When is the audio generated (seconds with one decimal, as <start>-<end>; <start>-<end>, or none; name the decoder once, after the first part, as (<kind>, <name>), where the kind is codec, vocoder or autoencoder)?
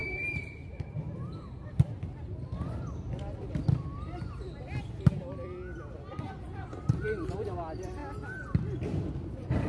0.0-3.9 (vocoder, BigVGAN v2); 6.1-8.0; 9.1-9.7